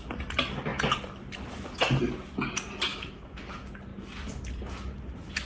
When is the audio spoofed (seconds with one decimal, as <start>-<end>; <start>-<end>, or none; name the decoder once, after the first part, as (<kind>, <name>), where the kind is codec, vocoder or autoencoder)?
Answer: 2.9-3.5 (autoencoder, DAC-VAE)

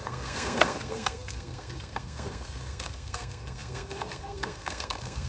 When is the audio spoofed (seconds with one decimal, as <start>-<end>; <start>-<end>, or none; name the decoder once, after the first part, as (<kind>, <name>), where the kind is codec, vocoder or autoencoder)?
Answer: 0.0-5.3 (codec, SNAC)

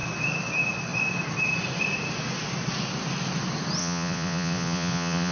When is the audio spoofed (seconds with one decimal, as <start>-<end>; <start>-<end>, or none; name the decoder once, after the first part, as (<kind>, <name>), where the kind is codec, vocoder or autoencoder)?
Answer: 3.8-5.3 (vocoder, Vocos)